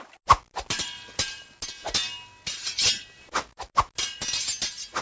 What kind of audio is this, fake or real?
real